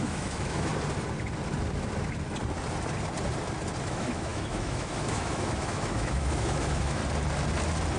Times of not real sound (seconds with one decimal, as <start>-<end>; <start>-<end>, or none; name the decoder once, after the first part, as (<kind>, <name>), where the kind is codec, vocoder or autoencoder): 0.0-0.7 (autoencoder, DAC-VAE); 3.8-7.0